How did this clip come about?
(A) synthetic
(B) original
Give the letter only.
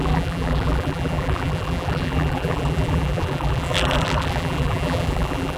A